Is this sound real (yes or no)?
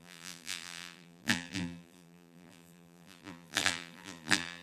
no